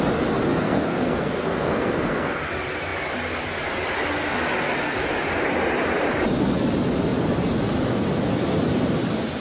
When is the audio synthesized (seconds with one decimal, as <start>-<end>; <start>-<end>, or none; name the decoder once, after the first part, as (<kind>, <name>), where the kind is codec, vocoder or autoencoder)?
0.5-2.4 (codec, SNAC)